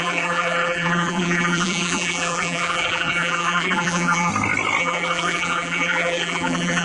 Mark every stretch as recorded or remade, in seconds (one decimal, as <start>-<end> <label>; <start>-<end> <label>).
0.0-4.3 remade; 4.3-4.8 recorded; 4.8-6.8 remade